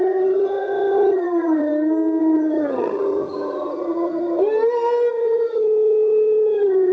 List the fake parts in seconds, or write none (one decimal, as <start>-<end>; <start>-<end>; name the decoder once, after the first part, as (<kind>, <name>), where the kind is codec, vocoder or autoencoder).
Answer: 0.0-1.7 (vocoder, HiFi-GAN); 2.2-4.4; 5.1-6.9